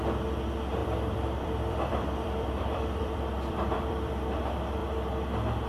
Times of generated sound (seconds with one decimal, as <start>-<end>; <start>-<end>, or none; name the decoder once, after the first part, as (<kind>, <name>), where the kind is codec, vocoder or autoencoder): 0.8-4.1 (vocoder, BigVGAN v2)